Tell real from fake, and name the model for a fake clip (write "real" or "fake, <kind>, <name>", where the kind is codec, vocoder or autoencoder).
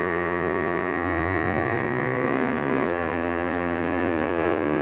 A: fake, vocoder, Vocos